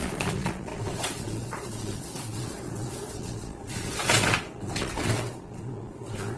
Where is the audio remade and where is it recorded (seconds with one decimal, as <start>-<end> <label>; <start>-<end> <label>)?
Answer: 0.0-6.4 remade